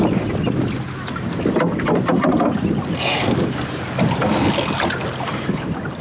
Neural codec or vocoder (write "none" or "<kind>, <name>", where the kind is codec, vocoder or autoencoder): none